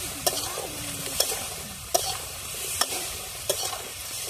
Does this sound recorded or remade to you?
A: remade